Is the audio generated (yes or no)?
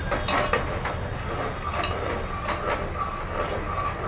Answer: no